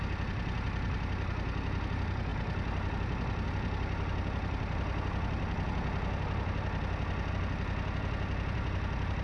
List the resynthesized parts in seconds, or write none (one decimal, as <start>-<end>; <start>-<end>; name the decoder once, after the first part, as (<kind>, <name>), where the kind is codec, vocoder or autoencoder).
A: none